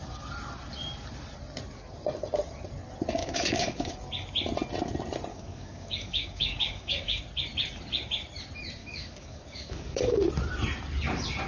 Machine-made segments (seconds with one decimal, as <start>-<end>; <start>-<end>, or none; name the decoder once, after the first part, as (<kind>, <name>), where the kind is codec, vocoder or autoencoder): 3.2-3.9 (codec, DAC); 5.3-7.2; 8.8-10.3